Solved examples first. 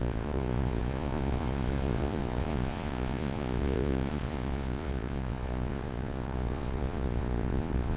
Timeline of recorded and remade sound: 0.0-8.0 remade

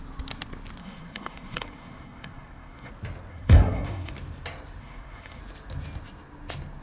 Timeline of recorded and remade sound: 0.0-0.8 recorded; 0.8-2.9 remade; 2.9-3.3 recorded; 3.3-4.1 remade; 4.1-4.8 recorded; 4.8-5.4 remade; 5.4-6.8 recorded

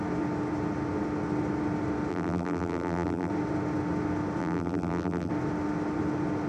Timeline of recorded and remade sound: 0.0-2.1 recorded; 2.1-3.3 remade; 3.3-4.4 recorded; 4.4-5.3 remade; 5.3-6.5 recorded